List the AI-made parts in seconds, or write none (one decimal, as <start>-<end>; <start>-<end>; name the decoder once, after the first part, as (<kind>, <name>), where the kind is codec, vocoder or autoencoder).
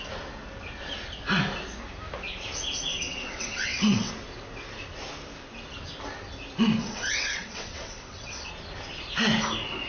2.9-4.1 (vocoder, WaveNeXt); 6.8-8.5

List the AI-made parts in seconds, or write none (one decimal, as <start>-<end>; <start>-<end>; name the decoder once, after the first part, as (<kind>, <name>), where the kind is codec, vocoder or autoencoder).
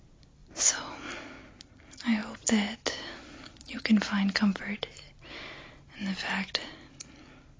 none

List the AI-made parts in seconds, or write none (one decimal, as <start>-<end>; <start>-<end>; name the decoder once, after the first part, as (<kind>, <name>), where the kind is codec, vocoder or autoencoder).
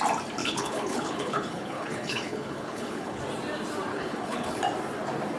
0.4-3.2 (codec, HILCodec); 3.9-4.6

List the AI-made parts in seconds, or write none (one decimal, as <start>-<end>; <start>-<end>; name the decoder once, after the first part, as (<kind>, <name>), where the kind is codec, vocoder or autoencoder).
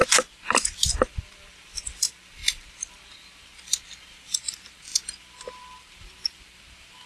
0.0-4.9 (vocoder, BigVGAN v2); 5.6-7.1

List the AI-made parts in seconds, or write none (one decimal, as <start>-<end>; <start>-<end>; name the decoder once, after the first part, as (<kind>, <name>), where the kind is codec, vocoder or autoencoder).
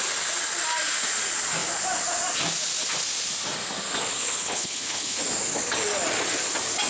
4.2-5.2 (codec, HILCodec)